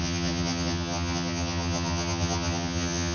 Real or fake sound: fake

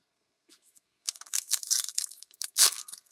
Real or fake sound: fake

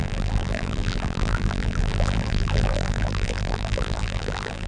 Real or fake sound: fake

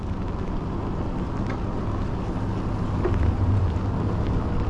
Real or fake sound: real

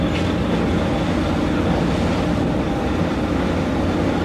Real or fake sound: real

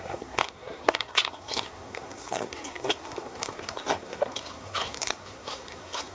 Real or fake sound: fake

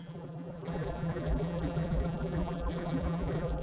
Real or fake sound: fake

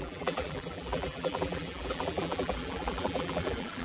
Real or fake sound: fake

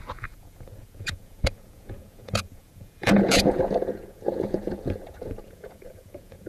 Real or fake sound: fake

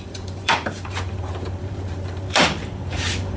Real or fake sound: fake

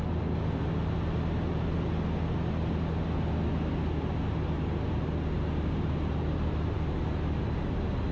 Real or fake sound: real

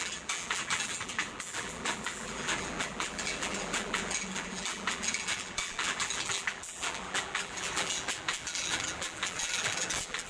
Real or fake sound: fake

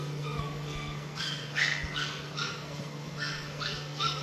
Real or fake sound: fake